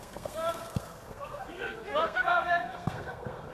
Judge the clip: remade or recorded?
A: remade